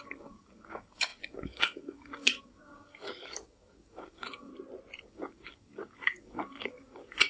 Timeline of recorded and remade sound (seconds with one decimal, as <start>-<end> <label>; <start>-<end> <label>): 0.0-4.5 remade; 4.5-5.0 recorded; 5.0-7.3 remade